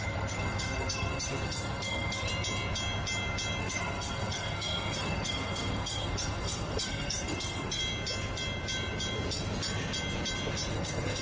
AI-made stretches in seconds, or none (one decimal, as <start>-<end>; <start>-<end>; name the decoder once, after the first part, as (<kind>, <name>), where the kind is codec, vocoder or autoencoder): 0.0-2.3 (codec, SNAC); 3.6-7.8; 10.7-11.2